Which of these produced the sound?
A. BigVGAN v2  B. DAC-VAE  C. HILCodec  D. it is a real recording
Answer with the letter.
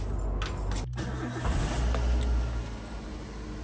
D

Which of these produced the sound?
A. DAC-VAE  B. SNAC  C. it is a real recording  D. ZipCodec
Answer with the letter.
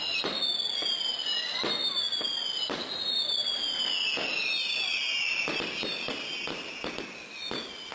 C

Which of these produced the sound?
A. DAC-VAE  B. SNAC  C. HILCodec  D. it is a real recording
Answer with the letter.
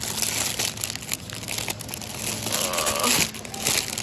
D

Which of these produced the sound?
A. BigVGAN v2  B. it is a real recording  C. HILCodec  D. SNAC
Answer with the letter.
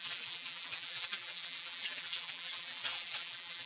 A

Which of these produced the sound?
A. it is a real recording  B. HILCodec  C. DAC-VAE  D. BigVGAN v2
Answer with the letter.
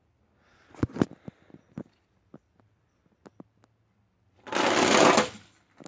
A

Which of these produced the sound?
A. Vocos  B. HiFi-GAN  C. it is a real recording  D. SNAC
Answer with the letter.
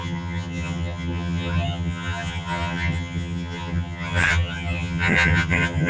B